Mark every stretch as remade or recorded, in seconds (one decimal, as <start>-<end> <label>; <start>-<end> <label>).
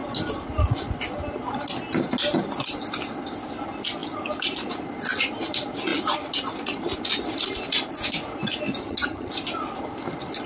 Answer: 0.0-8.8 recorded; 8.8-9.3 remade; 9.3-10.5 recorded